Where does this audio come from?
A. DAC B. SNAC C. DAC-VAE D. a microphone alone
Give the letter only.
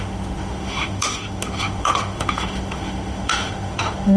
C